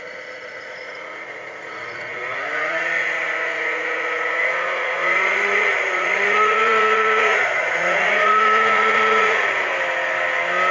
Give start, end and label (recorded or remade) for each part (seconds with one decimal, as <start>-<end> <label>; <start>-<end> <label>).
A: 0.0-9.7 remade; 9.7-10.7 recorded